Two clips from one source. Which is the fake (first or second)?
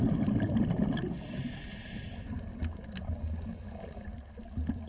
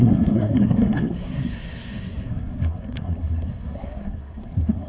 second